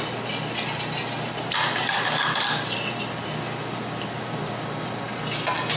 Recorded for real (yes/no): yes